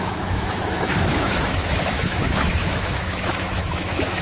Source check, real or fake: fake